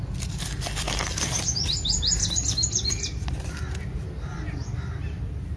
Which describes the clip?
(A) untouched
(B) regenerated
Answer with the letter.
A